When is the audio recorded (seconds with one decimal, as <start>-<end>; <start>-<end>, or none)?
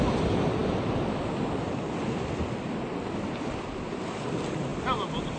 0.0-5.4